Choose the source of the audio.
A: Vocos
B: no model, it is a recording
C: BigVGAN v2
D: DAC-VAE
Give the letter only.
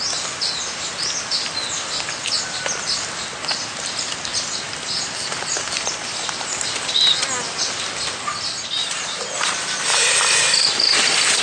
B